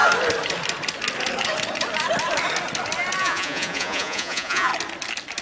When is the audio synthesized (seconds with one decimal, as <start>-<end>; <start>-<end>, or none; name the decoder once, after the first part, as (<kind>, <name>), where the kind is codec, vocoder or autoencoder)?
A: 3.2-4.7 (vocoder, Vocos)